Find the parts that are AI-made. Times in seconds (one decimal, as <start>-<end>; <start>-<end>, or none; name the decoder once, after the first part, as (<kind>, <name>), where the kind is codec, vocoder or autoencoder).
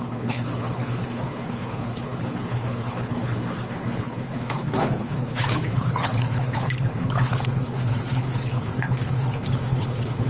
0.0-10.3 (codec, HILCodec)